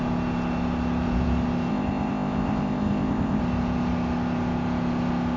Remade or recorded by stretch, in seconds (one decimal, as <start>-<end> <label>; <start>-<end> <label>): 0.0-1.7 recorded; 1.7-3.4 remade; 3.4-5.4 recorded

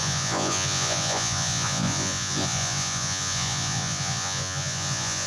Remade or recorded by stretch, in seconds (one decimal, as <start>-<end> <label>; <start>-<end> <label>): 0.0-5.3 remade

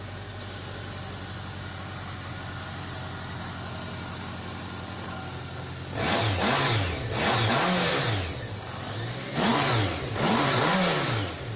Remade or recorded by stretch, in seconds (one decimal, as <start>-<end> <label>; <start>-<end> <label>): 0.0-11.6 recorded